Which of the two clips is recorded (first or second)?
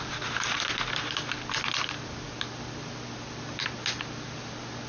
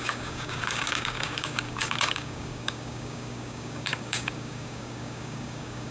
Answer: first